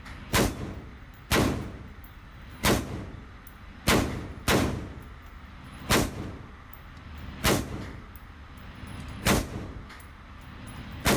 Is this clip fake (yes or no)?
no